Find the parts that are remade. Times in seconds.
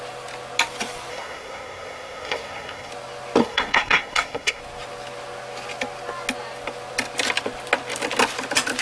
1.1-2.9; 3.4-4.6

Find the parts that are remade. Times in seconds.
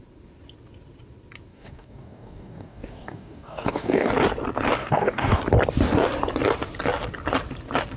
1.5-4.1; 4.8-5.4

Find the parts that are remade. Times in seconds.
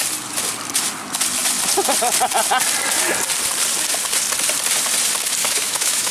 5.4-6.1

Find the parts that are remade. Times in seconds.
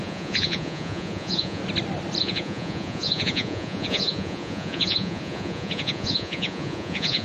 0.0-1.6; 2.2-7.2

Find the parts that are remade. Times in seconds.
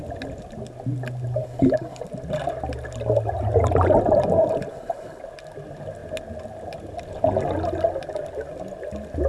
1.4-2.0; 4.7-5.2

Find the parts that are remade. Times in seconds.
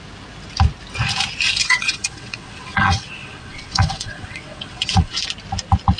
1.6-5.2